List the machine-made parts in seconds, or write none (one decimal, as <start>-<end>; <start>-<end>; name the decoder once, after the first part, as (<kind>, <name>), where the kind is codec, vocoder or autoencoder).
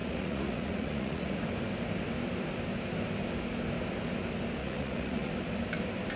0.0-1.4 (vocoder, Vocos); 4.6-5.3